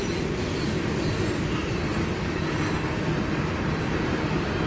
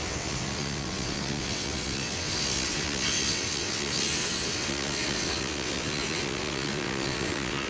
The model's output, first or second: second